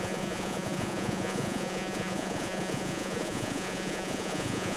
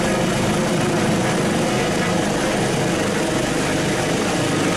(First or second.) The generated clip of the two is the first